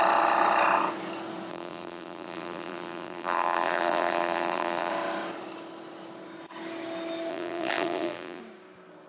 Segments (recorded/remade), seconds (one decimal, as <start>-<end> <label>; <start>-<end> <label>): 0.0-1.5 recorded; 1.5-4.9 remade; 4.9-7.3 recorded; 7.3-8.4 remade; 8.4-9.1 recorded